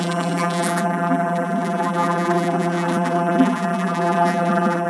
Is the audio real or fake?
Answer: fake